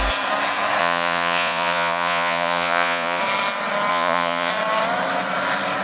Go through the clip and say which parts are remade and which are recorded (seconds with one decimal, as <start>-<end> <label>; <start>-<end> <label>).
0.0-0.8 recorded; 0.8-3.2 remade; 3.2-3.9 recorded; 3.9-4.5 remade; 4.5-5.8 recorded